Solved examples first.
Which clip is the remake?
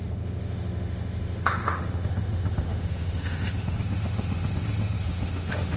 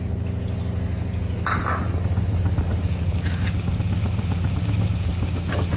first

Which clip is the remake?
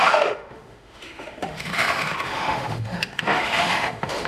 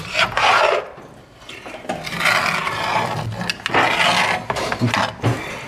first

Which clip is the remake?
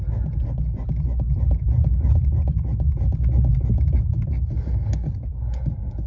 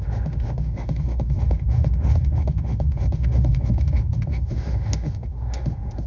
second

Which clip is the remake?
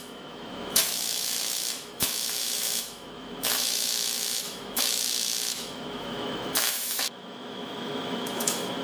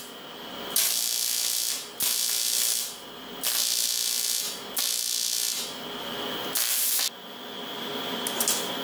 first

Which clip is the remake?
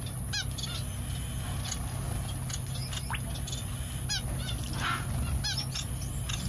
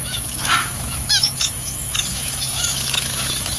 second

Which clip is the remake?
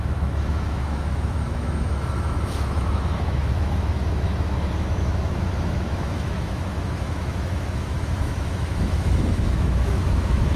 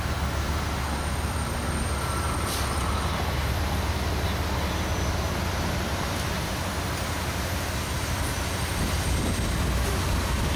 first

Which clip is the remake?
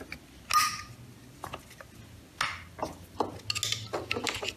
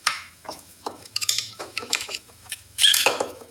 second